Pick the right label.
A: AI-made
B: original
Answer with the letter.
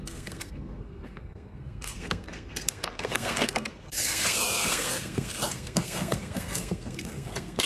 A